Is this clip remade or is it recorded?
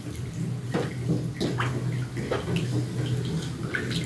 recorded